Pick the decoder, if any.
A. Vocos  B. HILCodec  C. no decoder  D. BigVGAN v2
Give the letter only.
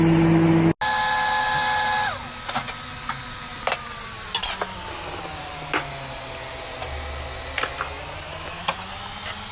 C